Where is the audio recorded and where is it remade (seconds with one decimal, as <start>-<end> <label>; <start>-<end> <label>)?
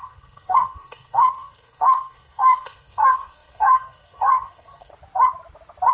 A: 0.0-4.9 remade; 4.9-5.9 recorded